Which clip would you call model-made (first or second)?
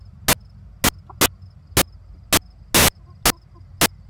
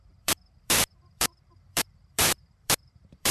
second